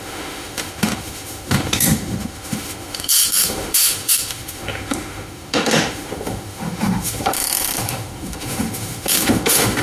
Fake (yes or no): yes